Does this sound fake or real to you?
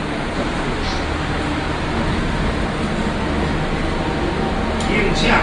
real